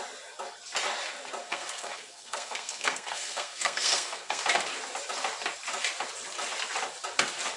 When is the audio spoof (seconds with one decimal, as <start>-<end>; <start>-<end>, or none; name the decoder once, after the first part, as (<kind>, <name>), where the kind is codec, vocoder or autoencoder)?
1.4-4.4 (codec, SNAC)